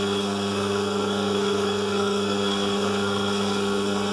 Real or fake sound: fake